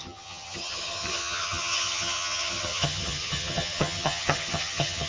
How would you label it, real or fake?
fake